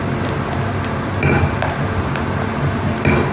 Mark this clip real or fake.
real